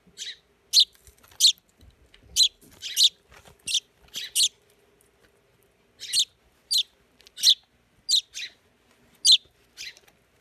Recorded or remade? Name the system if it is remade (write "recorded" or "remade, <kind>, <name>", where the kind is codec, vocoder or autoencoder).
recorded